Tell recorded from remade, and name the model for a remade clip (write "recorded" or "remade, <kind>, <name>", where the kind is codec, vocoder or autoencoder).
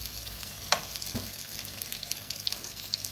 remade, codec, SNAC